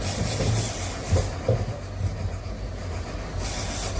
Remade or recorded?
recorded